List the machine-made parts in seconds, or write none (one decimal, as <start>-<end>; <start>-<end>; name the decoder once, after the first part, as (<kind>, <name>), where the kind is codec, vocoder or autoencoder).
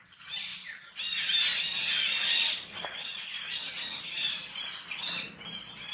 0.0-5.9 (vocoder, BigVGAN v2)